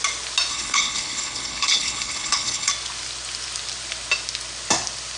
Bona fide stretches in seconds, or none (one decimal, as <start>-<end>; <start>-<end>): 0.0-0.5; 2.7-5.2